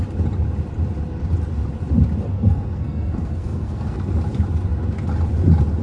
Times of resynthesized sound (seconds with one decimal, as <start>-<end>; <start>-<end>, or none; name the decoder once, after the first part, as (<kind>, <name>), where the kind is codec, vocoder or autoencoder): 2.3-4.1 (codec, SNAC)